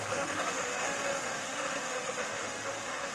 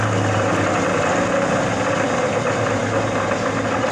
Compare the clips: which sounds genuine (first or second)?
second